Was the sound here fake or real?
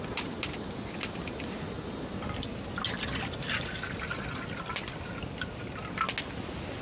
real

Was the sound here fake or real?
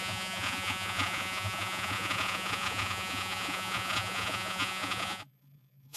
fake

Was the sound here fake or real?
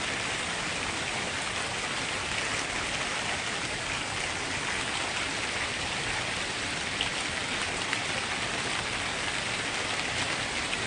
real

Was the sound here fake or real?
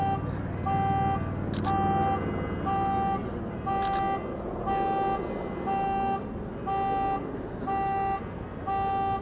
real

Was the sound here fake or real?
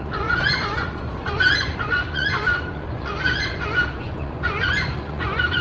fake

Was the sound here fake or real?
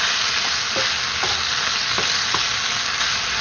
real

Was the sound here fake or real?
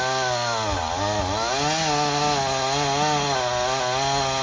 real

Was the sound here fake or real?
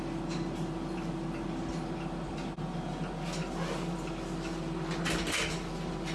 real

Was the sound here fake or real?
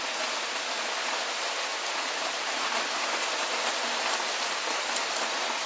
real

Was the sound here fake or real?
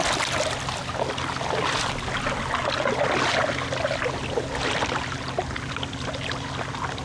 real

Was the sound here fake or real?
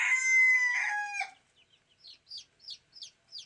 real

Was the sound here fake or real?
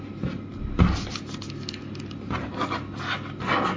real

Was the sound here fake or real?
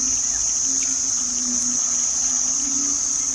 real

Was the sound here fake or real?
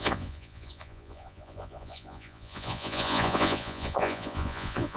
fake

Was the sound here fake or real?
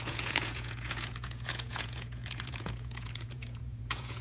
fake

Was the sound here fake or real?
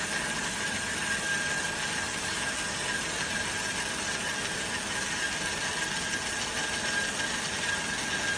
real